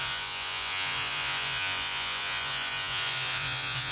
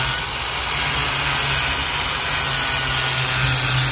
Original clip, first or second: second